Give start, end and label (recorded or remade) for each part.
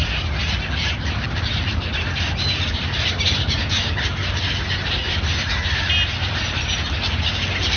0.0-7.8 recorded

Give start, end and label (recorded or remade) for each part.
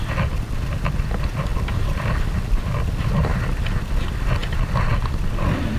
0.0-1.5 recorded; 1.5-2.1 remade; 2.1-4.4 recorded; 4.4-4.9 remade; 4.9-5.8 recorded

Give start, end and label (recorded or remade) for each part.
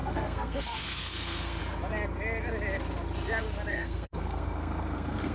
0.0-1.6 remade; 1.6-3.7 recorded; 3.7-5.3 remade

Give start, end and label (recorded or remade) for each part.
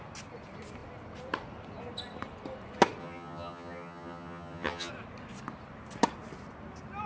0.0-3.0 recorded; 3.0-4.9 remade; 4.9-7.1 recorded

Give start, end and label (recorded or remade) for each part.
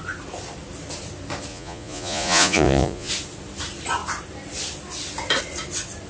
0.0-1.5 recorded; 1.5-3.1 remade; 3.1-6.1 recorded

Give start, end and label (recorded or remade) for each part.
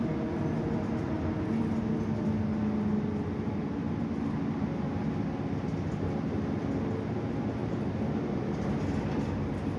0.0-7.6 recorded; 7.6-8.7 remade; 8.7-9.8 recorded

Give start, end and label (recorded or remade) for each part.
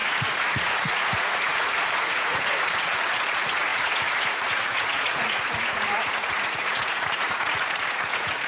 0.0-8.5 remade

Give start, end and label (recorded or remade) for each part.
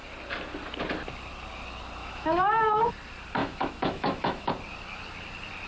0.0-2.0 recorded; 2.0-2.9 remade; 2.9-3.4 recorded; 3.4-4.5 remade; 4.5-5.7 recorded